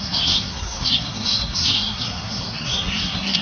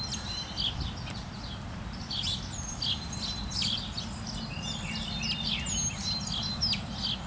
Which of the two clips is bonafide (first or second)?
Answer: second